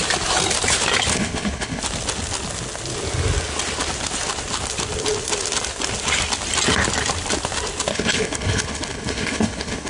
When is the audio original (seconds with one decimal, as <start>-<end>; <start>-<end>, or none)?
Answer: 0.0-1.1; 1.8-7.9